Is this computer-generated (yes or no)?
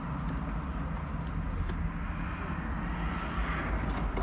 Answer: no